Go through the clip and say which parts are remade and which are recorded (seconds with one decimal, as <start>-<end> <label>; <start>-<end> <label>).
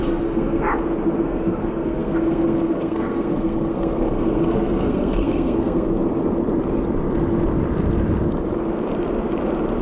0.0-0.7 remade; 0.7-1.2 recorded; 1.2-5.9 remade; 5.9-9.8 recorded